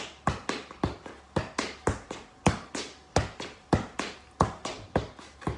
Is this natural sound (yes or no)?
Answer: yes